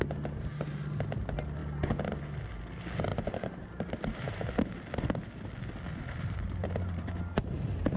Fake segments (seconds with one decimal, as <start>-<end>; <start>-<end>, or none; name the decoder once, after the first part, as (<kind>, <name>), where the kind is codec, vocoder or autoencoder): 3.1-4.5 (vocoder, BigVGAN v2); 5.9-7.1